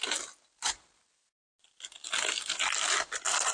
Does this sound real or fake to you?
real